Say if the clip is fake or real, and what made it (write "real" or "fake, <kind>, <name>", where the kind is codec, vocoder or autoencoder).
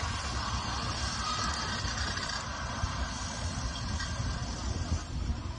real